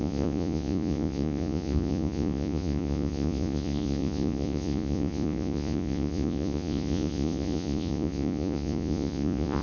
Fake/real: fake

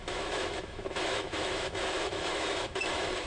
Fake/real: fake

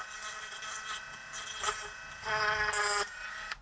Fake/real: real